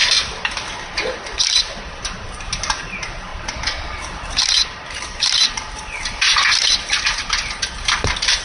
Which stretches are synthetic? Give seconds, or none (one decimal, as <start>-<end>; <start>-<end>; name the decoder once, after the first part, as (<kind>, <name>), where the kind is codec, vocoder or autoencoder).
1.5-3.3 (vocoder, BigVGAN v2); 4.0-8.4